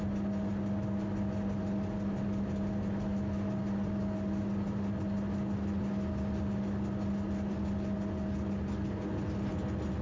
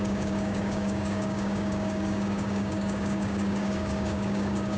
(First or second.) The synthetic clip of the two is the second